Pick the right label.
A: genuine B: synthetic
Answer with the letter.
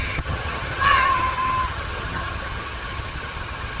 B